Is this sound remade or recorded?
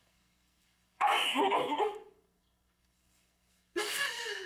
remade